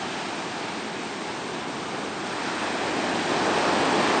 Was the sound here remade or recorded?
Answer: recorded